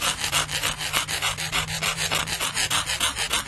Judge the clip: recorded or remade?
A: recorded